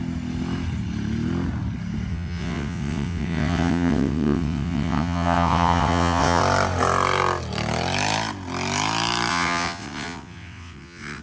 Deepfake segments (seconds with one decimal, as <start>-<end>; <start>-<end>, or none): 2.1-6.4; 9.3-11.2